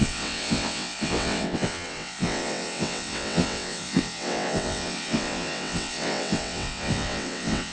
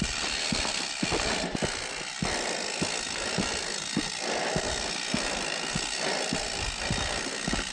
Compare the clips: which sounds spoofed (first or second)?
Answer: first